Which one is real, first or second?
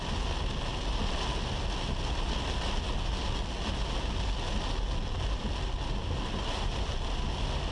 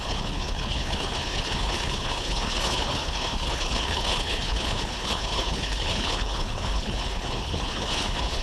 first